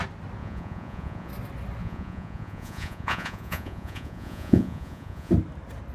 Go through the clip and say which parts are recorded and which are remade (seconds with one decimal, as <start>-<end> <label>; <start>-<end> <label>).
0.0-0.4 recorded; 0.4-1.3 remade; 1.3-1.8 recorded; 1.8-5.3 remade; 5.3-5.9 recorded